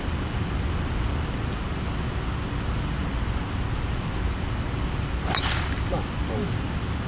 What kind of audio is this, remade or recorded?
remade